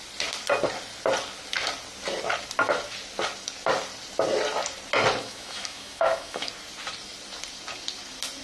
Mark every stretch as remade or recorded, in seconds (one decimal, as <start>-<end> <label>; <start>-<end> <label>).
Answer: 0.0-5.2 recorded; 5.2-6.5 remade; 6.5-8.4 recorded